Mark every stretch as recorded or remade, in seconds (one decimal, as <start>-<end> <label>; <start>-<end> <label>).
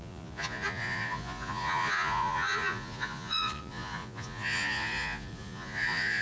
0.0-6.2 remade